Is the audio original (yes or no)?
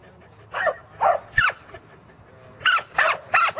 yes